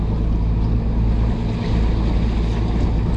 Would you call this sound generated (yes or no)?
no